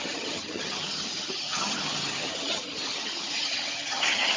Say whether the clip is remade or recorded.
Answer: remade